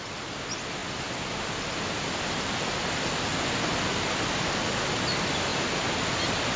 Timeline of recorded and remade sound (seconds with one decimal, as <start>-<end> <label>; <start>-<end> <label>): 0.0-6.6 recorded